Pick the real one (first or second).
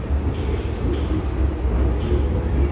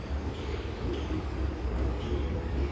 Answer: first